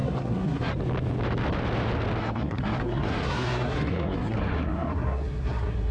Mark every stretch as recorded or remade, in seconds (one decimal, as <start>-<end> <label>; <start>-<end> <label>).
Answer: 0.0-0.7 remade; 0.7-2.2 recorded; 2.2-5.9 remade